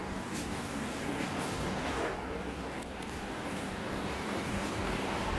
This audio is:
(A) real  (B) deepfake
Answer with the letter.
B